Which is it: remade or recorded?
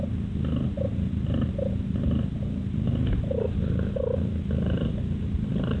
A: recorded